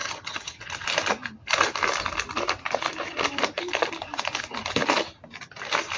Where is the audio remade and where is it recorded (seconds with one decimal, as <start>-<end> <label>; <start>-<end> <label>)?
0.0-0.6 remade; 0.6-6.0 recorded